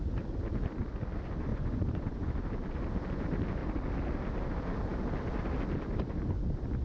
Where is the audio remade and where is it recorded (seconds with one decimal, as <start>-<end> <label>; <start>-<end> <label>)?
0.0-1.5 recorded; 1.5-2.3 remade; 2.3-6.8 recorded